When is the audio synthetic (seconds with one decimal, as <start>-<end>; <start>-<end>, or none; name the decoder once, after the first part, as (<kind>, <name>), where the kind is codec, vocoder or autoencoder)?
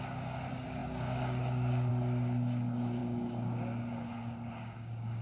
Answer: 0.0-5.2 (codec, DAC)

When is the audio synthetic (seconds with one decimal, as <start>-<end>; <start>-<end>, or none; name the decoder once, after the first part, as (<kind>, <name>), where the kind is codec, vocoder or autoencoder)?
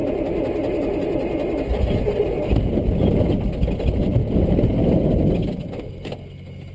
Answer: none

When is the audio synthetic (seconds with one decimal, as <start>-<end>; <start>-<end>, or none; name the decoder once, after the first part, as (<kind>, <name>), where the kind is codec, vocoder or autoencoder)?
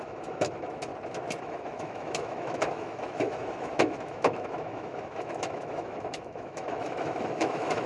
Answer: 0.0-0.9 (autoencoder, DAC-VAE); 1.4-7.9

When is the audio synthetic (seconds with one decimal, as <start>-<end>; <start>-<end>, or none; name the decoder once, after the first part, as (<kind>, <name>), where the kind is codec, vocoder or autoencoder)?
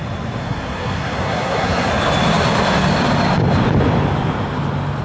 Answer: 0.4-1.9 (codec, SNAC)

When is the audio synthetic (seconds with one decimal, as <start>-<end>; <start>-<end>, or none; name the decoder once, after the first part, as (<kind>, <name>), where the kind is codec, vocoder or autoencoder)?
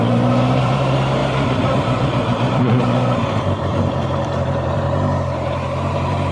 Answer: 0.0-1.2 (vocoder, BigVGAN v2); 3.7-6.3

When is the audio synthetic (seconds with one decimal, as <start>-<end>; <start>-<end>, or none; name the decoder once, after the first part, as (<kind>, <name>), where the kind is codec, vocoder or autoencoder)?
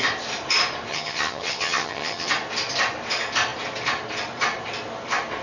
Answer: 0.9-2.3 (vocoder, HiFi-GAN)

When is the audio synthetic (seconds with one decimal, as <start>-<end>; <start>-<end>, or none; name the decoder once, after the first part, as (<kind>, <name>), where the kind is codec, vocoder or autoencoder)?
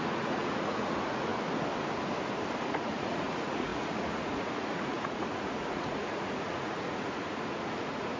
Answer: 0.0-1.3 (vocoder, Vocos); 2.7-8.2